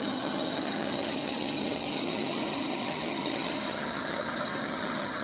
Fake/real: fake